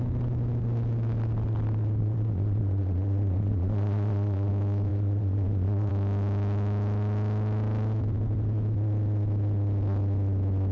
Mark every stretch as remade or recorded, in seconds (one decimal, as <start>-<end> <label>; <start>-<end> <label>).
0.0-2.0 recorded; 2.0-4.5 remade; 4.5-4.9 recorded; 4.9-5.9 remade; 5.9-10.7 recorded